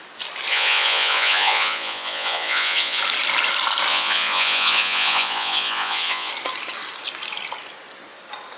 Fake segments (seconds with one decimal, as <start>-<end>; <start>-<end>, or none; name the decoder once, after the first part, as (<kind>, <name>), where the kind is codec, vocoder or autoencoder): 0.5-3.0 (vocoder, Vocos); 3.9-6.3